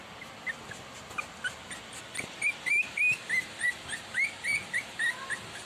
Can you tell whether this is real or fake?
real